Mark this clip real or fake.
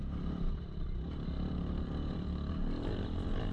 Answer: real